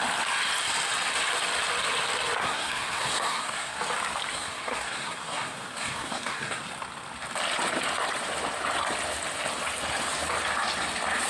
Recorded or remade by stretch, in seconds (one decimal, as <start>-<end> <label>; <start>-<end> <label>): 0.0-2.4 recorded; 2.4-3.8 remade; 3.8-4.3 recorded; 4.3-6.6 remade; 6.6-11.3 recorded